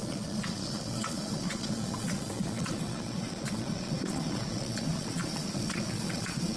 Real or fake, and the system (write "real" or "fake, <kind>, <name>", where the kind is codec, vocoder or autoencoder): fake, vocoder, Vocos